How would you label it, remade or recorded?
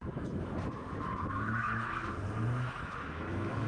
remade